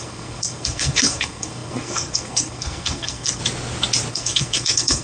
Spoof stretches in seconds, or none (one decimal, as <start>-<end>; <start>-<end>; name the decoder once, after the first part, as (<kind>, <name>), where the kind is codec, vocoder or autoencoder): 0.0-3.4 (codec, SNAC); 4.1-5.0